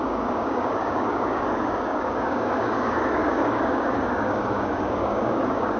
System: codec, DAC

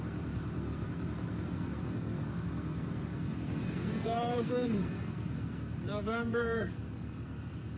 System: codec, SNAC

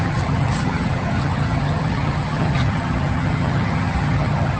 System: vocoder, HiFi-GAN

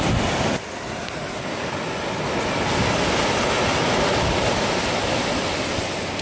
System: none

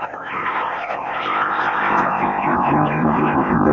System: codec, ZipCodec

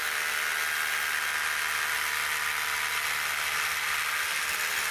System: none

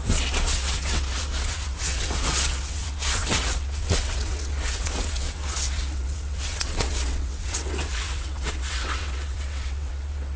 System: vocoder, WaveNeXt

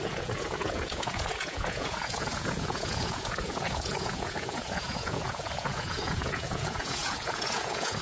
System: vocoder, Vocos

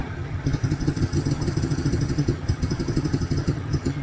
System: vocoder, HiFi-GAN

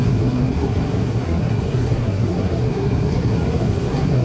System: codec, SNAC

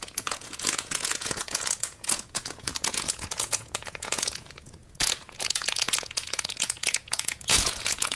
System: vocoder, Vocos